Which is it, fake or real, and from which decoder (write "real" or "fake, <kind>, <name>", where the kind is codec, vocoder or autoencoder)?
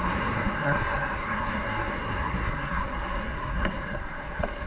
fake, codec, SNAC